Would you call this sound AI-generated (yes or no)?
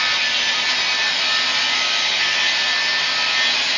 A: no